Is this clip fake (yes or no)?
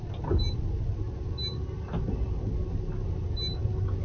no